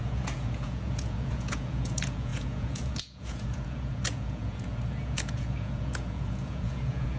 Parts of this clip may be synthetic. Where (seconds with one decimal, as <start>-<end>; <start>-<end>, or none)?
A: 0.0-7.2